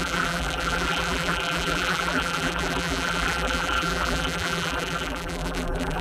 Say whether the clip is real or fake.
fake